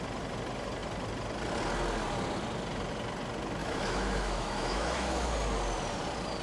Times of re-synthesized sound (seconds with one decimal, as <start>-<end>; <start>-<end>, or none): 3.6-5.3